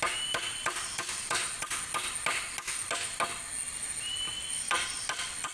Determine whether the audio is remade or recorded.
recorded